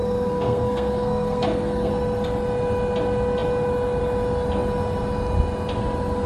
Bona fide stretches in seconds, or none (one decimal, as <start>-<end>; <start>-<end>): 1.9-6.3